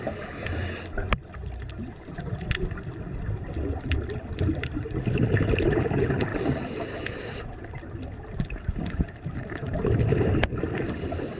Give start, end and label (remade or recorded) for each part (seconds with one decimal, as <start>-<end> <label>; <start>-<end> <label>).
0.0-0.6 remade; 0.6-1.8 recorded; 1.8-11.4 remade